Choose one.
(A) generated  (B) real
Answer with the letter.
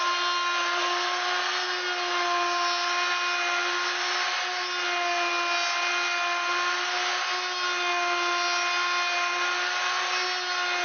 B